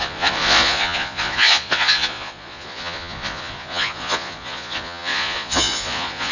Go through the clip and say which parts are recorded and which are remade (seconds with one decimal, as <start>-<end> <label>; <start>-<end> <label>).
0.0-6.3 remade